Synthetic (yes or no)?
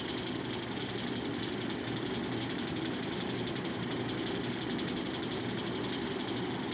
no